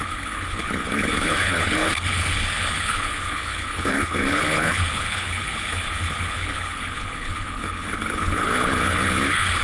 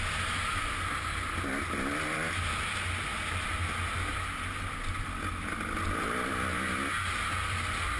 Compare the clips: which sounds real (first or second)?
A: second